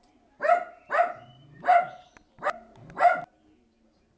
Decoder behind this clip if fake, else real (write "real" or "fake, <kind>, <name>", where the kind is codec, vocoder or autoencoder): real